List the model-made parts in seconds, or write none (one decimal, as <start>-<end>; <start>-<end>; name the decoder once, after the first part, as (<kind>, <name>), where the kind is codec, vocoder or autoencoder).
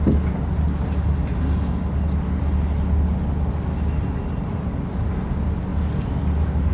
none